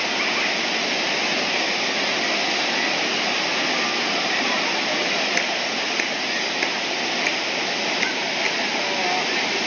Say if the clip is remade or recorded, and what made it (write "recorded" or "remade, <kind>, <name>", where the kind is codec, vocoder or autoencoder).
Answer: recorded